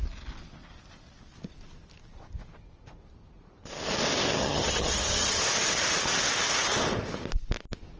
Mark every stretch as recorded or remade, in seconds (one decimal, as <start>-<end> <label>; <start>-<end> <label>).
0.0-4.4 recorded; 4.4-5.4 remade; 5.4-8.0 recorded